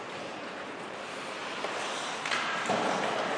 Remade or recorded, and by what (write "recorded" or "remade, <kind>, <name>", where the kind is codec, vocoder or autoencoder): remade, vocoder, BigVGAN v2